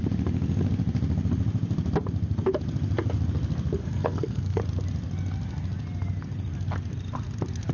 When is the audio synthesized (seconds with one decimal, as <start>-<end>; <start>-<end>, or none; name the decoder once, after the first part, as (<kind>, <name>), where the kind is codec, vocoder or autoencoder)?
3.8-4.6 (codec, SNAC)